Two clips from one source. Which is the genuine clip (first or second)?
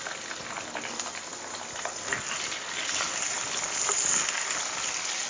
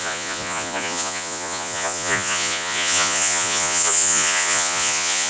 first